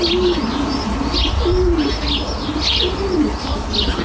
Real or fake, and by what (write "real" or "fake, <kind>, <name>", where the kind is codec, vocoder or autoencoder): real